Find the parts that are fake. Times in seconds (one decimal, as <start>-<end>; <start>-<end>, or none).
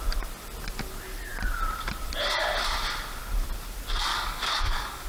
4.1-5.1